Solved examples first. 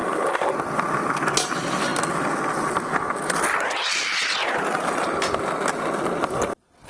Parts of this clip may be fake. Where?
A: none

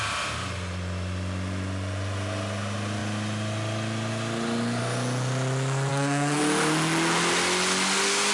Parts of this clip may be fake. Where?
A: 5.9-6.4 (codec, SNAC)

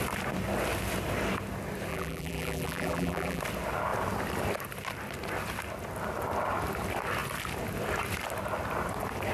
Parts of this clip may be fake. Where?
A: 1.9-3.4 (vocoder, BigVGAN v2)

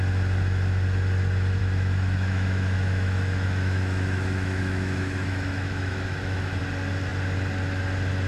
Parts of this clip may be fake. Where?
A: 1.6-6.6 (autoencoder, DAC-VAE)

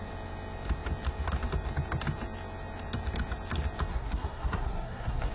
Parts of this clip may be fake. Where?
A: 3.9-5.3 (codec, SNAC)

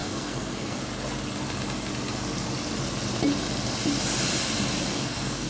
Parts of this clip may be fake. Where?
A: 0.0-0.8 (codec, SNAC); 4.9-5.5

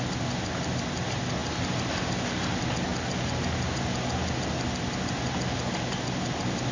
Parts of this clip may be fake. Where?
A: 0.0-1.4 (vocoder, BigVGAN v2); 2.3-2.9

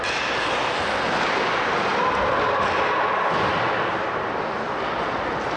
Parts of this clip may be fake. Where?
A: none